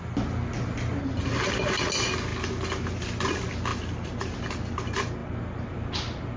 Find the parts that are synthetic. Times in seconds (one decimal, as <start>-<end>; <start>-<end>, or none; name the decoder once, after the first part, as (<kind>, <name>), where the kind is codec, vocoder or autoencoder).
none